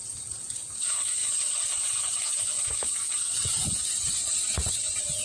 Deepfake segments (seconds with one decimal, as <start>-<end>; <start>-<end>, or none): 0.0-5.2